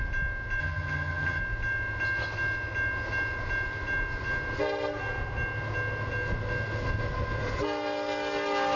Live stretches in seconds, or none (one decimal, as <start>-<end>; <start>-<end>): 0.0-0.6; 1.4-8.8